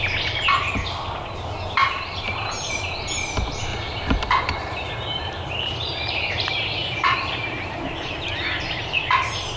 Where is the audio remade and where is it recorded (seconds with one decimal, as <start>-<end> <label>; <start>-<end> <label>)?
0.0-1.8 recorded; 1.8-2.7 remade; 2.7-3.7 recorded; 3.7-8.8 remade; 8.8-9.6 recorded